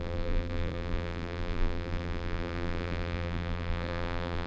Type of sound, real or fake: fake